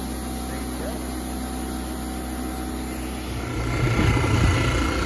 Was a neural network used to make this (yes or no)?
no